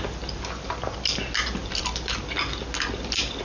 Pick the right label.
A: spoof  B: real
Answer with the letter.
B